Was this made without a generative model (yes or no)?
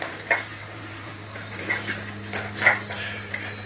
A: no